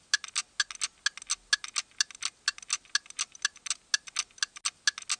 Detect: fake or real real